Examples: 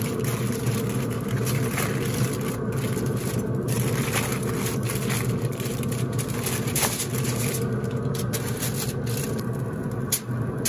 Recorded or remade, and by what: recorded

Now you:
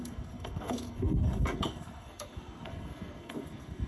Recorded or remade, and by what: remade, codec, SNAC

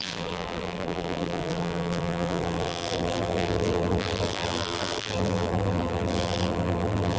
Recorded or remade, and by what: remade, vocoder, BigVGAN v2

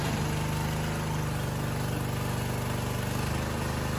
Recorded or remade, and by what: recorded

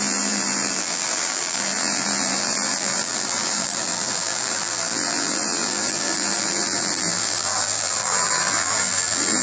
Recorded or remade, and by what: remade, vocoder, BigVGAN v2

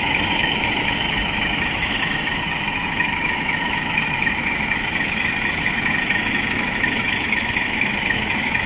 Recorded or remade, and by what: remade, autoencoder, DAC-VAE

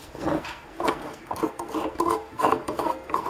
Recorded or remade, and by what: remade, codec, SNAC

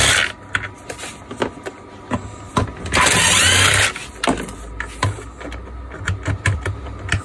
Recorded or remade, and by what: recorded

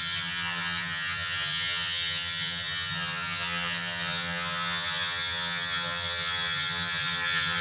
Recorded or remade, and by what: remade, vocoder, HiFi-GAN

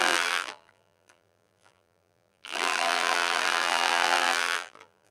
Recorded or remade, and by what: remade, vocoder, BigVGAN v2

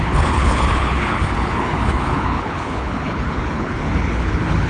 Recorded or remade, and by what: remade, codec, HILCodec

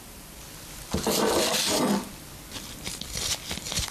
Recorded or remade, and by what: recorded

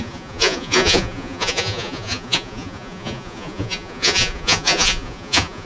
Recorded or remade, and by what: remade, vocoder, Vocos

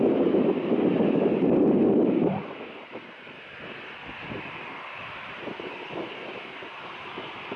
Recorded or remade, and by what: recorded